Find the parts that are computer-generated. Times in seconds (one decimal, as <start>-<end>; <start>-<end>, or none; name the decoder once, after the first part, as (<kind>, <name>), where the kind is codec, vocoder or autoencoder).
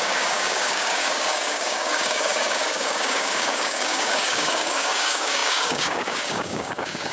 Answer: 0.0-7.1 (codec, DAC)